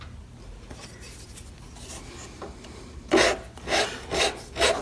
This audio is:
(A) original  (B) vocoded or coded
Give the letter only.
A